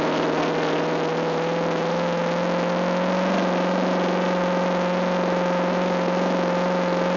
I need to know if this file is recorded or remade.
recorded